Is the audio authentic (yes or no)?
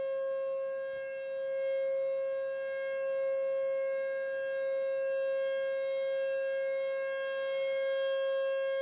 yes